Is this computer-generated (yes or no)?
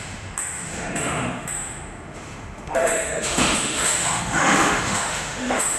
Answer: yes